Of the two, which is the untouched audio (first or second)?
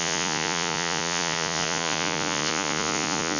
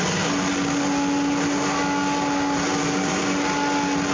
second